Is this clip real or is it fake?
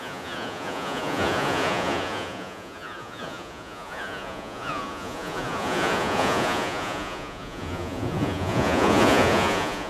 fake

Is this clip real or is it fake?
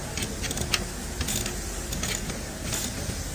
real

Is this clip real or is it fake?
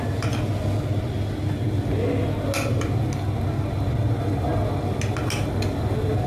real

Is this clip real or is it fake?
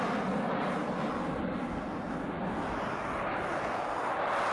real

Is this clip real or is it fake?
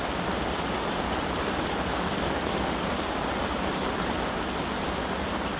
real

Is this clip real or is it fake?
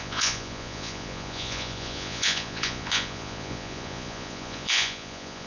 fake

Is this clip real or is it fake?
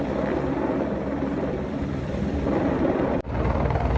fake